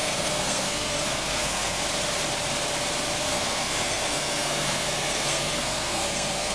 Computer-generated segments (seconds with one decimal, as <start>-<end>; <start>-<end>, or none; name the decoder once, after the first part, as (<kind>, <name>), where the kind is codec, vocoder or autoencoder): 0.0-1.8 (codec, SNAC); 3.2-6.5